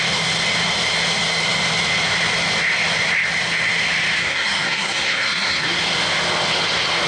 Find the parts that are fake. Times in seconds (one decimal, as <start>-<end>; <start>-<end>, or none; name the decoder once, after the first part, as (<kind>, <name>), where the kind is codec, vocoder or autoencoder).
4.2-5.8 (codec, SNAC)